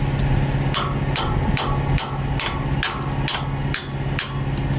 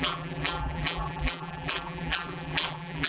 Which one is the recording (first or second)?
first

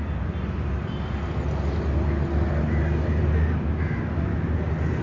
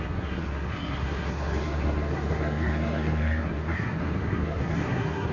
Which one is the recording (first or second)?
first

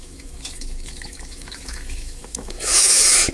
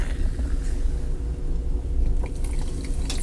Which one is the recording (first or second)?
second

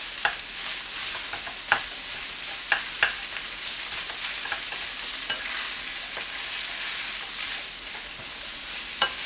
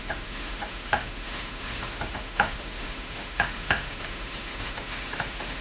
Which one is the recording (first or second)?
first